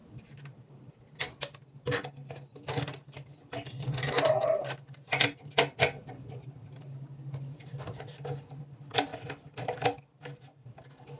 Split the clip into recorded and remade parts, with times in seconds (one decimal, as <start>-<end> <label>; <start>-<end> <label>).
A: 0.0-9.1 recorded; 9.1-10.2 remade; 10.2-11.2 recorded